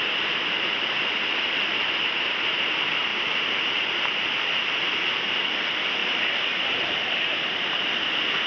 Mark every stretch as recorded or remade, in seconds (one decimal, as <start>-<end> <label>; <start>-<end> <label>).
0.0-3.1 recorded; 3.1-5.1 remade; 5.1-6.0 recorded; 6.0-7.8 remade; 7.8-8.5 recorded